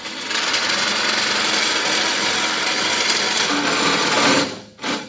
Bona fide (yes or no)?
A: yes